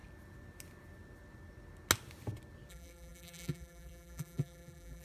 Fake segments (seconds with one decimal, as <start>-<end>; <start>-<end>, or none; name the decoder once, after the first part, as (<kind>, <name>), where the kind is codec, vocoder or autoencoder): 2.7-5.0 (vocoder, BigVGAN v2)